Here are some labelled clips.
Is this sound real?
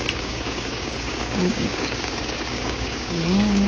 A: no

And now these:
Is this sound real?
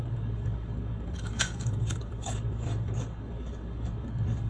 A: no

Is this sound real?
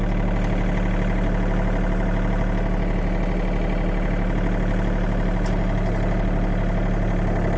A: yes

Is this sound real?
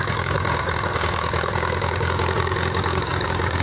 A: no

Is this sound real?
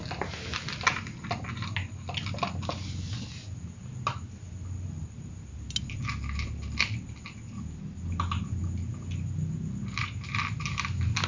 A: yes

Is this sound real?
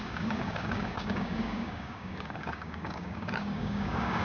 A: no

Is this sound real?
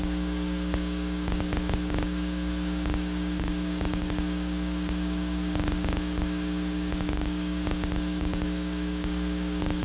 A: no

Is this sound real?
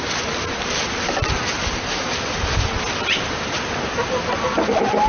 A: yes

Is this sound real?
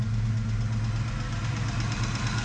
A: yes